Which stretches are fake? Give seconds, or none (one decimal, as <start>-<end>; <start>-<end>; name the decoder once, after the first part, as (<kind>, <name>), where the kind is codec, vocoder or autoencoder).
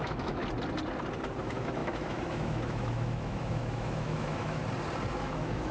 0.0-0.4 (autoencoder, DAC-VAE); 1.4-4.6; 5.1-5.7